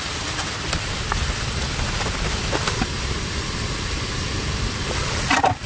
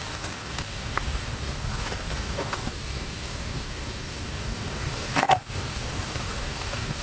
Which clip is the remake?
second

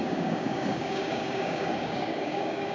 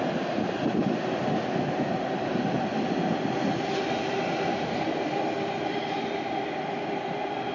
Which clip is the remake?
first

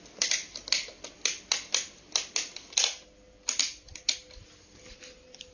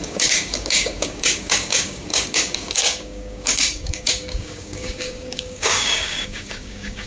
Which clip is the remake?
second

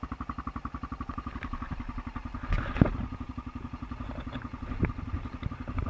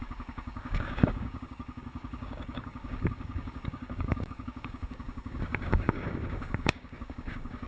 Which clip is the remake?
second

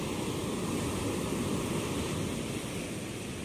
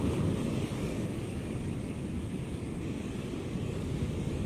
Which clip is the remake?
second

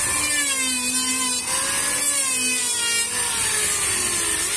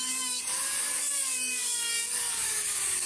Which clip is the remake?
second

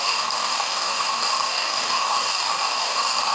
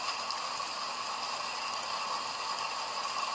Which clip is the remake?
first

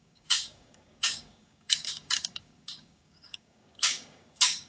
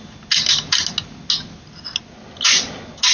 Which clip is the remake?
first